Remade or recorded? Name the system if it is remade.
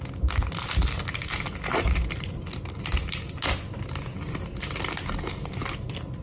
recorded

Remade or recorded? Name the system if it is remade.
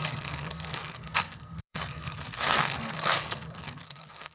remade, codec, SNAC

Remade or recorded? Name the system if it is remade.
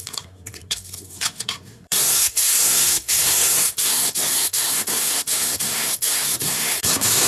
remade, codec, SNAC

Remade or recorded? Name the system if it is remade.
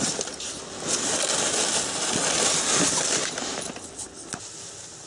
recorded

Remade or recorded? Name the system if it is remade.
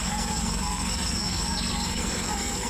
remade, codec, SNAC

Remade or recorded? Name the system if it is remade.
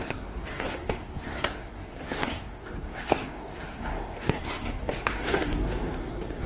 remade, codec, SNAC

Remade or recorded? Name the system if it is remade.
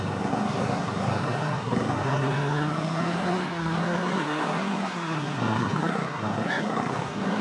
remade, codec, SNAC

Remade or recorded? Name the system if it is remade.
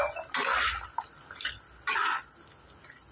recorded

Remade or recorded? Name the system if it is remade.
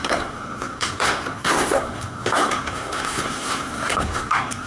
remade, codec, SNAC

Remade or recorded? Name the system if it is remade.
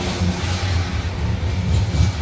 recorded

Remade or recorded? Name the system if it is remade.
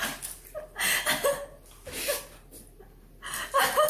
recorded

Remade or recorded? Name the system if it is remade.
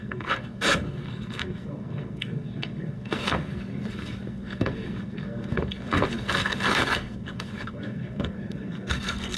remade, codec, SNAC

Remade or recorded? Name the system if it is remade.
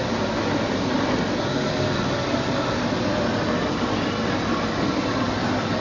recorded